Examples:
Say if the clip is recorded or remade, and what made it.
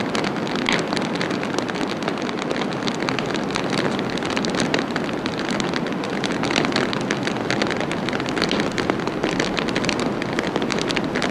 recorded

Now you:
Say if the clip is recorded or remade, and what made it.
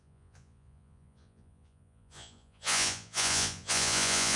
remade, vocoder, Vocos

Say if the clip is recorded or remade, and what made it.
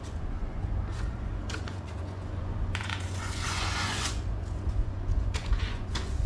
remade, vocoder, Vocos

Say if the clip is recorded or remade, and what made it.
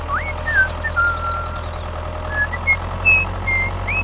recorded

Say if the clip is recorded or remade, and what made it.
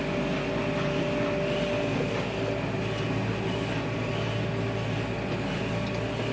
recorded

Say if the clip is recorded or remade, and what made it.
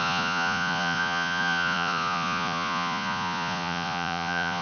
remade, vocoder, Vocos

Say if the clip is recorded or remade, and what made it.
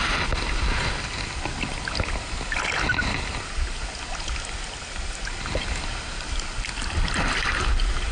recorded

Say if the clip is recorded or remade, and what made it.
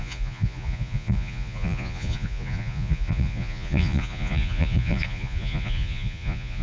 remade, vocoder, Vocos